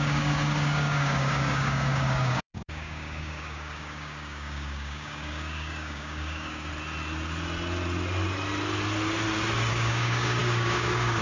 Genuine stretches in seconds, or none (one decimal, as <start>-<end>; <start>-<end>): 6.7-9.7

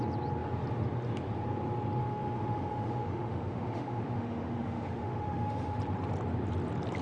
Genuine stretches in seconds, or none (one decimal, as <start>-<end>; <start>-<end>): 0.0-2.0; 5.8-7.0

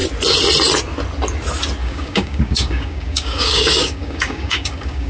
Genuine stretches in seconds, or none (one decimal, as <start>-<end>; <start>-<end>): 0.0-1.8

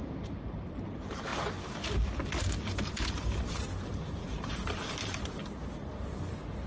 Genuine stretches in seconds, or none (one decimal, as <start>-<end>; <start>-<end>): 1.3-2.6; 5.4-5.9

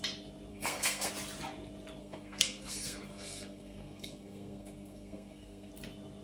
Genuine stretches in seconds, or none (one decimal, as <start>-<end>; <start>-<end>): 0.0-0.5; 1.1-2.0; 5.7-6.2

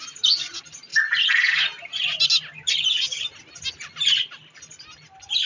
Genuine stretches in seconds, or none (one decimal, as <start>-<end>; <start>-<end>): 0.0-5.5